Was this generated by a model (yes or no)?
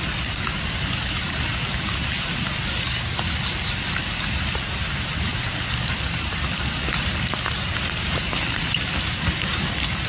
no